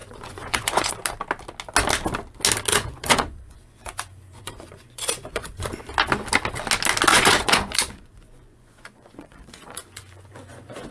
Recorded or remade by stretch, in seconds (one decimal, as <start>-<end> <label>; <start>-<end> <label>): 0.0-0.9 remade; 0.9-2.7 recorded; 2.7-5.8 remade; 5.8-7.1 recorded; 7.1-10.9 remade